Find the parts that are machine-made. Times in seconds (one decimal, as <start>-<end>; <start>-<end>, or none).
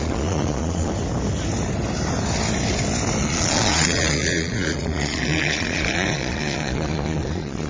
0.0-0.9; 3.2-7.7